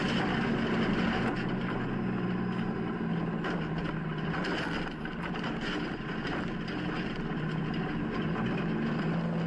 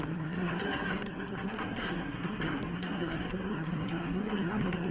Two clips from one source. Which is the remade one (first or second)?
second